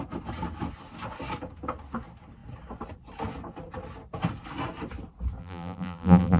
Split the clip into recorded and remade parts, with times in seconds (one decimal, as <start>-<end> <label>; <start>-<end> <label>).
0.0-5.4 recorded; 5.4-6.4 remade